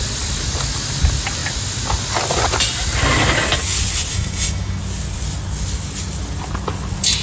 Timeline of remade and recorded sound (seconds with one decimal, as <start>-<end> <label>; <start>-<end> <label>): 0.0-4.1 recorded; 4.1-4.8 remade; 4.8-7.2 recorded